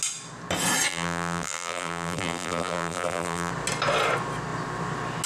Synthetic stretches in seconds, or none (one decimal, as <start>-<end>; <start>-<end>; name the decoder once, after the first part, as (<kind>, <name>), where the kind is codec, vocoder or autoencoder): 0.9-3.5 (vocoder, BigVGAN v2)